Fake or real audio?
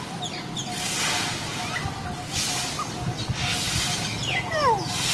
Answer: real